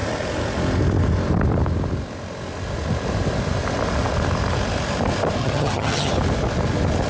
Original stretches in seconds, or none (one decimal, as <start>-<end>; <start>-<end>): 0.0-5.4; 6.1-7.1